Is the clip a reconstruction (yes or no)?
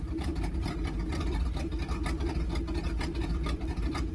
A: yes